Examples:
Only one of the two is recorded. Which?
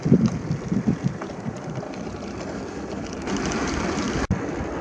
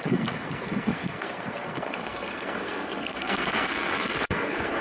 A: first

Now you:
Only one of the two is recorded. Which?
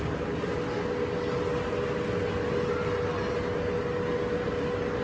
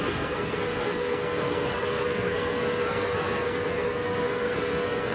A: first